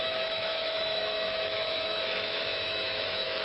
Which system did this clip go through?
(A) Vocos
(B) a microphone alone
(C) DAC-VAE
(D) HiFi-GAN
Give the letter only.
C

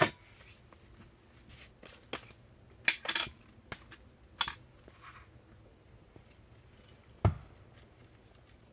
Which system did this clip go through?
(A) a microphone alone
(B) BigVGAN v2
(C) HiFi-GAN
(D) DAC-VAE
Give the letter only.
A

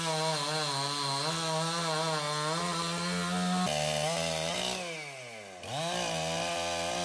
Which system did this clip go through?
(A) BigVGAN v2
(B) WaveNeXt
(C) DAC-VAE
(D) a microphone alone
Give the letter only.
D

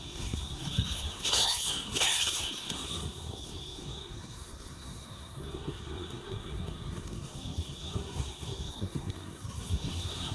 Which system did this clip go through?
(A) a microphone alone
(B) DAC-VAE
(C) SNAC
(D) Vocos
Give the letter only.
C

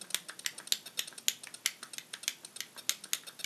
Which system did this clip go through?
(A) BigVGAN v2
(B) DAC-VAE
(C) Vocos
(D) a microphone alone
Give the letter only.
D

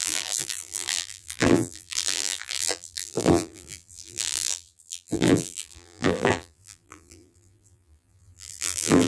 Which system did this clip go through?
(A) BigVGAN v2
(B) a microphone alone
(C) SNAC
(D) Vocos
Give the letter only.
A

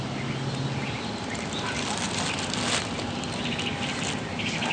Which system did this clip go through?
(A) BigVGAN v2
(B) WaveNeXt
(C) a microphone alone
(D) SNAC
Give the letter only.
C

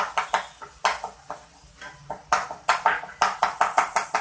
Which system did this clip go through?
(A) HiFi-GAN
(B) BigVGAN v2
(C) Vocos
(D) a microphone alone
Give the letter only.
D